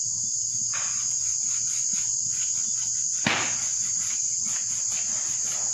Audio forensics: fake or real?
real